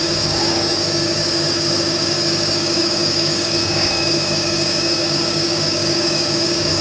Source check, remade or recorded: remade